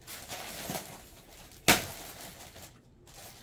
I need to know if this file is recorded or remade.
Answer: recorded